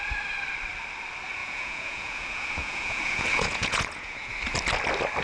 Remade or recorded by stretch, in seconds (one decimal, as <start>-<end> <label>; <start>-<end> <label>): 0.0-1.4 recorded; 1.4-4.3 remade; 4.3-5.2 recorded